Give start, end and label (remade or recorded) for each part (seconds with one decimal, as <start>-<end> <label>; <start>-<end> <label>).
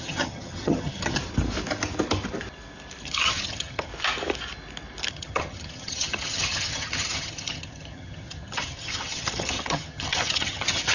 0.0-1.2 remade; 1.2-3.0 recorded; 3.0-3.9 remade; 3.9-5.1 recorded; 5.1-10.9 remade